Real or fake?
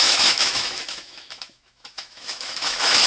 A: fake